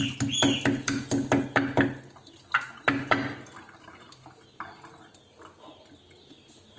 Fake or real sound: real